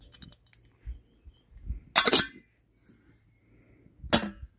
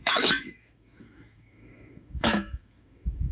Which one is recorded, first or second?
first